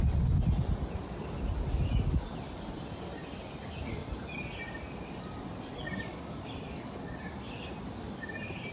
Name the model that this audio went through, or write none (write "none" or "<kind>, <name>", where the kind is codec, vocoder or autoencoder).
none